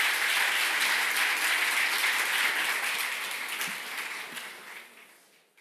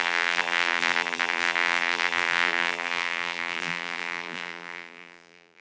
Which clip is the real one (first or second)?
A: first